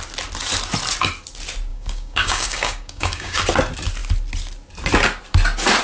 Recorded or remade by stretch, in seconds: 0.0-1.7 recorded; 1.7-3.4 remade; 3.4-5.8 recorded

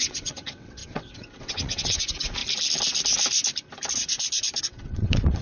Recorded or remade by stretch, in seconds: 0.0-2.4 remade; 2.4-4.6 recorded; 4.6-5.4 remade

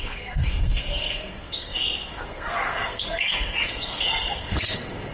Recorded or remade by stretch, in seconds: 0.0-5.1 remade

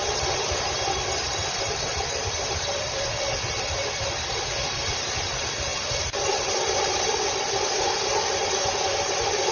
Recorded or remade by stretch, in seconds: 0.0-9.5 recorded

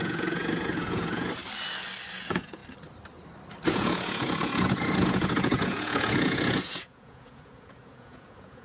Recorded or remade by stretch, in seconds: 0.0-1.4 remade; 1.4-2.1 recorded; 2.1-2.6 remade; 2.6-3.7 recorded; 3.7-8.6 remade

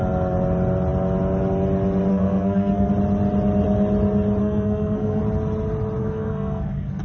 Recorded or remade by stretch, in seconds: 0.0-2.1 recorded; 2.1-2.9 remade; 2.9-4.4 recorded; 4.4-5.2 remade; 5.2-6.0 recorded; 6.0-7.0 remade

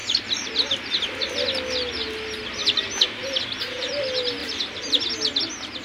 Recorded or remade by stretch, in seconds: 0.0-0.5 remade; 0.5-2.6 recorded; 2.6-3.9 remade; 3.9-4.4 recorded; 4.4-5.0 remade; 5.0-5.8 recorded